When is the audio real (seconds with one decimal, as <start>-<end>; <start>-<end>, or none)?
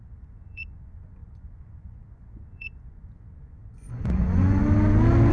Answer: 4.6-5.3